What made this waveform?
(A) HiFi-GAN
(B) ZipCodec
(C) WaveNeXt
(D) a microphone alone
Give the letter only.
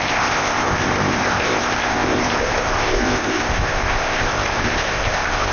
B